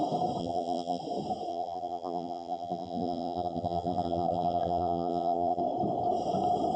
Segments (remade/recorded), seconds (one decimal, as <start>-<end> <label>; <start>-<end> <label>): 0.0-0.4 recorded; 0.4-1.0 remade; 1.0-1.5 recorded; 1.5-5.6 remade; 5.6-6.8 recorded